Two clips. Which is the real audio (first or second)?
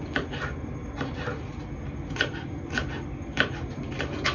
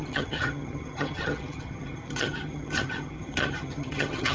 first